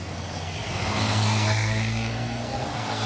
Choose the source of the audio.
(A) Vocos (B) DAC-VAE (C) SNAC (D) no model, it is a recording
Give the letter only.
C